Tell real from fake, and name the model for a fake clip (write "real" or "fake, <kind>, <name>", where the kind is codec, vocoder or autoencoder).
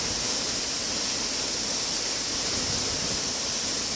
real